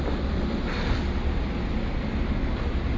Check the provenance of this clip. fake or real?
real